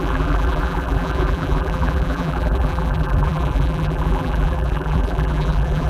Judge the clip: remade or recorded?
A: remade